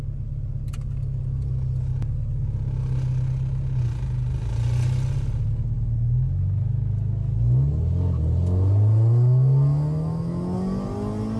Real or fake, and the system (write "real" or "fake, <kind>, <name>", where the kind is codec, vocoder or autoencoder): real